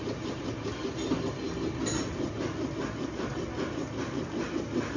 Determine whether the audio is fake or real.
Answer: real